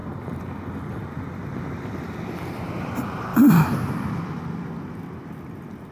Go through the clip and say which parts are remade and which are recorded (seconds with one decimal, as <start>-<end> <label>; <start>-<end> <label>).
0.0-3.3 recorded; 3.3-4.4 remade; 4.4-5.9 recorded